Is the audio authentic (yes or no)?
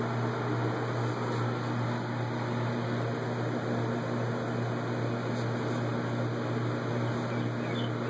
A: yes